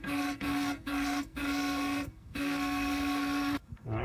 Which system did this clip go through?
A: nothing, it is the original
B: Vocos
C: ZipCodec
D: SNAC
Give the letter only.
D